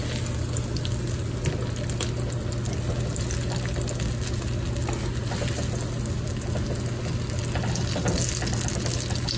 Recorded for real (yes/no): yes